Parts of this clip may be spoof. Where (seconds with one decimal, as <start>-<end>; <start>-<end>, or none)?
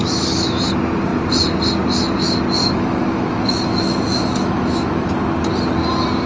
0.0-0.6; 2.6-5.1